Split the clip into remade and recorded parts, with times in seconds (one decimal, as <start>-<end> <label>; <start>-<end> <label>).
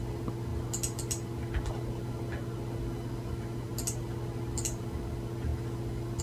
0.0-6.2 recorded